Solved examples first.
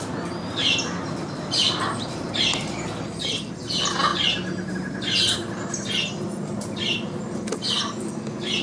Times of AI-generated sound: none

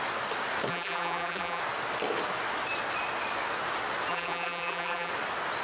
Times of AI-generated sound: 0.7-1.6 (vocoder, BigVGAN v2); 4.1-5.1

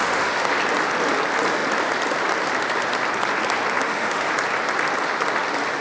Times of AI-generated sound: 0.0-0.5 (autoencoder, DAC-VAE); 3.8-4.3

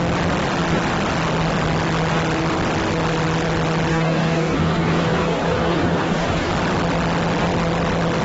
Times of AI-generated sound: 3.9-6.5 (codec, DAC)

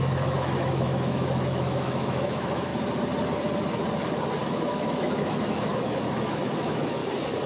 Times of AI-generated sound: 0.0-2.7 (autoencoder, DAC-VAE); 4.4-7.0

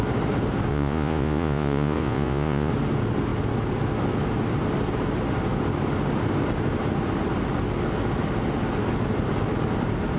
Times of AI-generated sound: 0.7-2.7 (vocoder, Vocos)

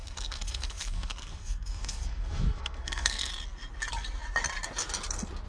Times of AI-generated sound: 0.0-3.3 (codec, SNAC)